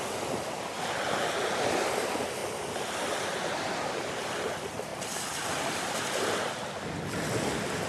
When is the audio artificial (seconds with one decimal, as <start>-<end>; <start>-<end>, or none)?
none